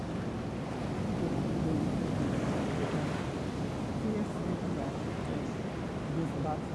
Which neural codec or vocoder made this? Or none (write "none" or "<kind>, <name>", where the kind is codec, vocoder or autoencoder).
none